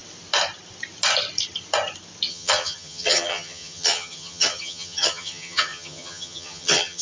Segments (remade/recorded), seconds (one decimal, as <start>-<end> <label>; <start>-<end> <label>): 0.0-2.3 recorded; 2.3-7.0 remade